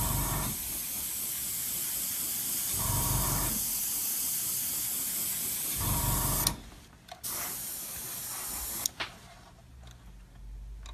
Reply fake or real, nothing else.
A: real